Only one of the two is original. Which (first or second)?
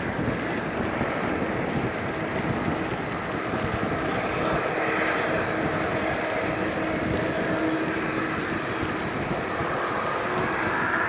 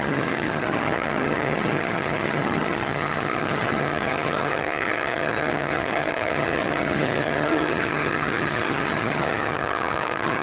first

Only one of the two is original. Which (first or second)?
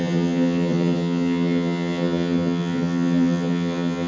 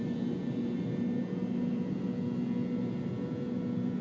second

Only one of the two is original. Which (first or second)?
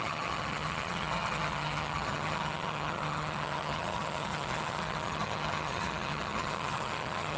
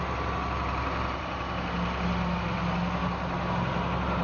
second